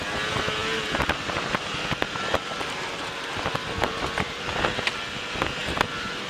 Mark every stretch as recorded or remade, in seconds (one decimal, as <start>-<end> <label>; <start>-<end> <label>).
0.0-0.6 recorded; 0.6-4.4 remade; 4.4-6.3 recorded

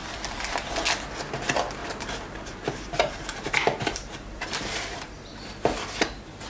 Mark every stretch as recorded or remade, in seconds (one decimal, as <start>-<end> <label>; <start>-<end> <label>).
0.0-1.8 recorded; 1.8-5.3 remade; 5.3-6.5 recorded

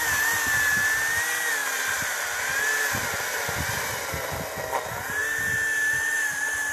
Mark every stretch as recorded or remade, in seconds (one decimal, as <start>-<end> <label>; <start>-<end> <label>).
0.0-6.7 recorded

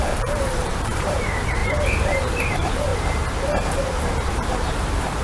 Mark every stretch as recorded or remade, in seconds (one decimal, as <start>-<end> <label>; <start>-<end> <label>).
0.0-2.9 remade; 2.9-4.3 recorded; 4.3-5.2 remade

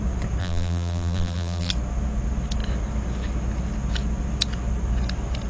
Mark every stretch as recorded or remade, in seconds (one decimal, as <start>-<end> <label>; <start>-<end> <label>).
0.0-0.4 recorded; 0.4-1.7 remade; 1.7-5.5 recorded

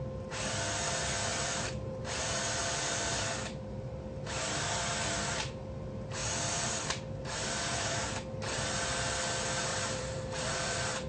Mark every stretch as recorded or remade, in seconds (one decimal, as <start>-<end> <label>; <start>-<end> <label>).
0.0-1.3 recorded; 1.3-1.9 remade; 1.9-6.2 recorded; 6.2-6.7 remade; 6.7-9.7 recorded; 9.7-11.1 remade

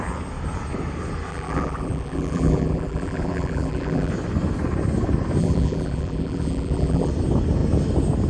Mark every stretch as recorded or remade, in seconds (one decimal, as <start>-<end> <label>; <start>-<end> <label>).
0.0-1.3 recorded; 1.3-4.1 remade; 4.1-5.4 recorded; 5.4-7.1 remade; 7.1-8.3 recorded

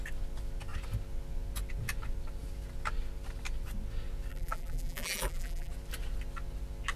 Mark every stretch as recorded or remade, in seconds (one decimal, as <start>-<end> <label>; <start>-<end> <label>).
0.0-4.3 recorded; 4.3-5.7 remade; 5.7-7.0 recorded